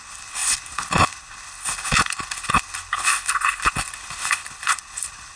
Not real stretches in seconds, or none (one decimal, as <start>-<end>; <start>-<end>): 0.0-5.4